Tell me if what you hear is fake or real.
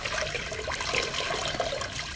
real